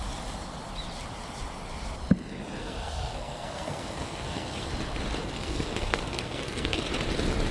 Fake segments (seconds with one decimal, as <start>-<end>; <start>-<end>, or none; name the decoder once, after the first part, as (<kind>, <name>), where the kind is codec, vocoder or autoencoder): 2.6-4.7 (codec, SNAC); 5.2-6.9